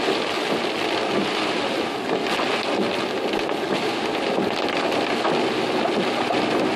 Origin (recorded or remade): recorded